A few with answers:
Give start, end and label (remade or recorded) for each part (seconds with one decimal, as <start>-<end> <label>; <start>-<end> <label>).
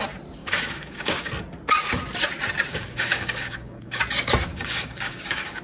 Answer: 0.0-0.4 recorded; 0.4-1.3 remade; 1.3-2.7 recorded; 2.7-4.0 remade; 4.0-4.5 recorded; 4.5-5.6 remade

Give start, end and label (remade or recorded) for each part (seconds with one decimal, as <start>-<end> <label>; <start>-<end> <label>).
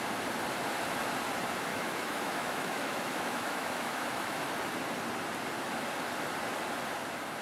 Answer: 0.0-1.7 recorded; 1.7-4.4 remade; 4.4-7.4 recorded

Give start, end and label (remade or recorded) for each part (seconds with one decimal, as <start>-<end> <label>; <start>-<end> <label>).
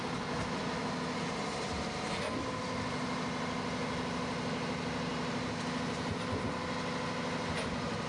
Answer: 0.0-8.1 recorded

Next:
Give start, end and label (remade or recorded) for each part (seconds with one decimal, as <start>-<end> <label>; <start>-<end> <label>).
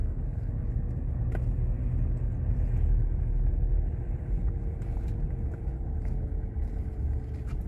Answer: 0.0-0.5 remade; 0.5-7.7 recorded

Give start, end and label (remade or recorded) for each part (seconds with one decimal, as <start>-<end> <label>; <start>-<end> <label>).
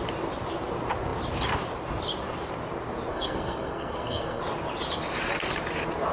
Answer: 0.0-3.1 recorded; 3.1-4.4 remade; 4.4-6.1 recorded